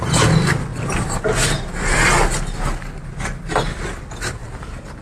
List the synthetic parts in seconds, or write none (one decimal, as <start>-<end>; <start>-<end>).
none